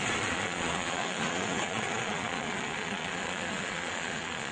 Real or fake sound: fake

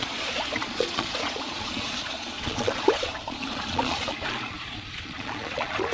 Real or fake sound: fake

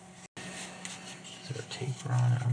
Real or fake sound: real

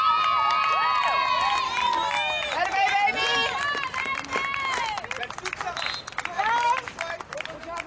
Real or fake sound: real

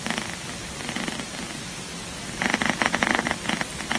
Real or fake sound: real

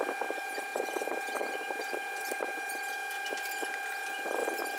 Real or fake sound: real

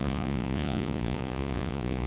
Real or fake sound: fake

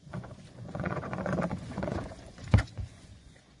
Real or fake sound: fake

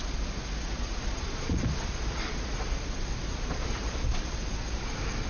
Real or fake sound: fake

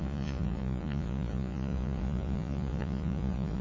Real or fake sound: fake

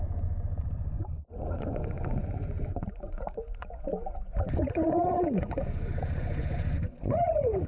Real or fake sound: fake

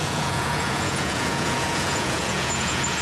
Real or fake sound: fake